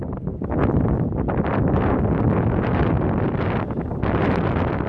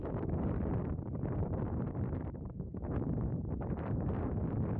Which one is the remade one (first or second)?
second